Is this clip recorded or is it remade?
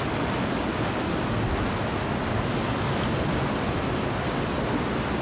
recorded